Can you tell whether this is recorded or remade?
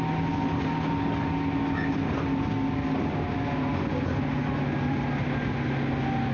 recorded